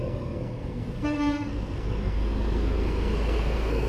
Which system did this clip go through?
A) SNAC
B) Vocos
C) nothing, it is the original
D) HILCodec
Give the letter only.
A